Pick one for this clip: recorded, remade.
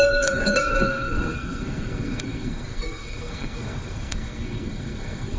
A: remade